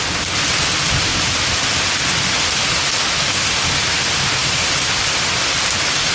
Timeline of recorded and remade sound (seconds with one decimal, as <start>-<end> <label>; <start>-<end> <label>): 0.0-6.1 recorded